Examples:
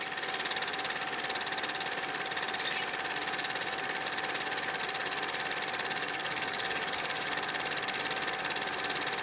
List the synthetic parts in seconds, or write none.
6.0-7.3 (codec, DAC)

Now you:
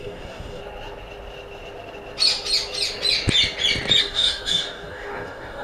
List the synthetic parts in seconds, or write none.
0.0-0.6 (codec, DAC); 4.0-5.6

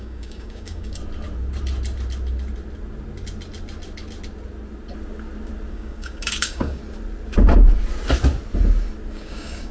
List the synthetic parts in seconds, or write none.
0.0-1.0 (codec, DAC); 5.7-6.8; 9.1-9.7

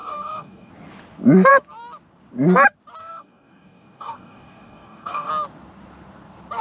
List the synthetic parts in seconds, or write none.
0.0-0.7 (codec, DAC); 3.0-5.3